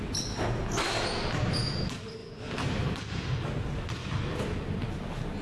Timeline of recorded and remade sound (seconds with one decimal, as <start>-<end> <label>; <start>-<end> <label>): 0.0-2.2 recorded; 2.2-3.4 remade; 3.4-4.0 recorded; 4.0-4.8 remade; 4.8-5.4 recorded